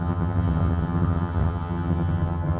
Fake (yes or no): yes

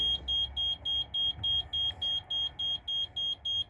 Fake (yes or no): no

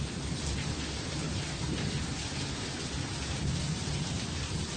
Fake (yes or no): yes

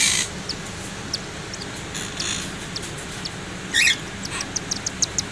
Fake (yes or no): no